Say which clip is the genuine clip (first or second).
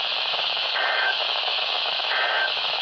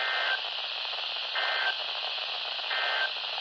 second